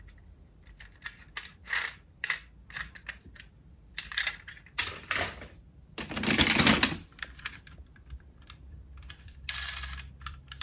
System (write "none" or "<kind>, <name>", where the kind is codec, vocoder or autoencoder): vocoder, BigVGAN v2